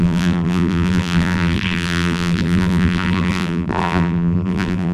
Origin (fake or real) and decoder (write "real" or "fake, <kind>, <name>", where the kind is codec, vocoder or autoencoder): fake, vocoder, BigVGAN v2